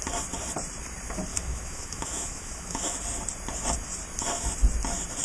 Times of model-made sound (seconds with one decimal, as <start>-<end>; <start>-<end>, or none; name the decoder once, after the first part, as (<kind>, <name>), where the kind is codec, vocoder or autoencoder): 1.3-3.0 (autoencoder, DAC-VAE)